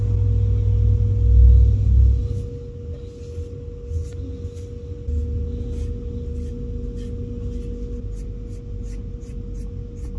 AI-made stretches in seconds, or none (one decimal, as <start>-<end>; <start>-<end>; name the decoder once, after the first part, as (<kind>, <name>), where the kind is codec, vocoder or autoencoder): none